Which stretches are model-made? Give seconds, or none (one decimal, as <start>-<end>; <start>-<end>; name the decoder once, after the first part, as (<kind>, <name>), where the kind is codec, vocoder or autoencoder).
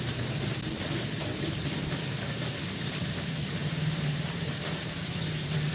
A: 0.0-5.7 (vocoder, BigVGAN v2)